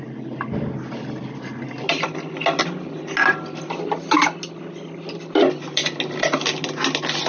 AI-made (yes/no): no